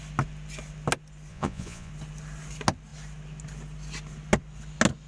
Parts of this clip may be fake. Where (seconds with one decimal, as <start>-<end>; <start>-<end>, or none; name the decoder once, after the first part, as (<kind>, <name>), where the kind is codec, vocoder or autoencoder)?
1.3-1.9 (vocoder, Vocos)